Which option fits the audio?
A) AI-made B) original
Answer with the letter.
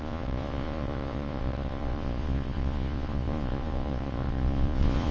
A